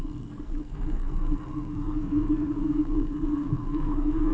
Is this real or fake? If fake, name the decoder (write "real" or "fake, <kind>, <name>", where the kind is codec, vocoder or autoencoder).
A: fake, codec, SNAC